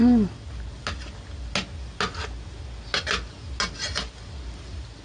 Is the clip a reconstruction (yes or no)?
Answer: no